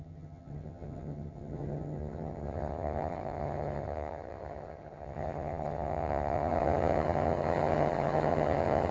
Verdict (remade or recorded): remade